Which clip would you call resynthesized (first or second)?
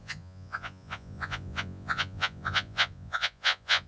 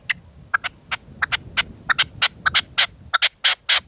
first